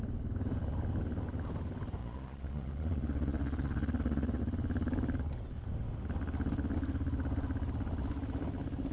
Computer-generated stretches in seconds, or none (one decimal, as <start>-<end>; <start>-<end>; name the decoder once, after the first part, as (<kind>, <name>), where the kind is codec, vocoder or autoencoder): 2.0-4.4 (vocoder, Vocos)